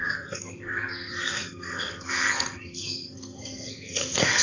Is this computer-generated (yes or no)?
yes